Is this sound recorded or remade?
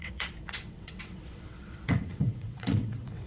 remade